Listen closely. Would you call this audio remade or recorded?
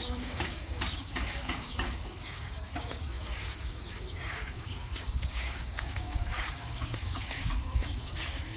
remade